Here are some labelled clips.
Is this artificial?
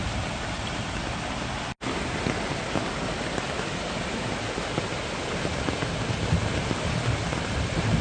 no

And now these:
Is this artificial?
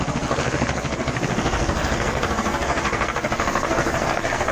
yes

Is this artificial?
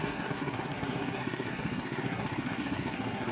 yes